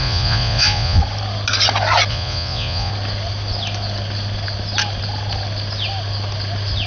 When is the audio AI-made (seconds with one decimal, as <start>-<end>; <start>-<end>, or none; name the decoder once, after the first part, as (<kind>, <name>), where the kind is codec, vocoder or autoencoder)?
0.0-1.0 (vocoder, Vocos); 2.1-2.9